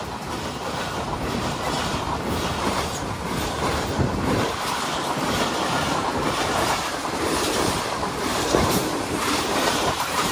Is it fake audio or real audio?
fake